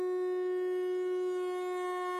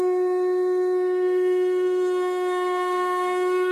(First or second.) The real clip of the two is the first